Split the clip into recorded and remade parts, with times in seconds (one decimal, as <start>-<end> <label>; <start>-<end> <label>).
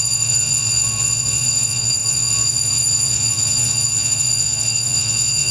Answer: 0.0-5.5 remade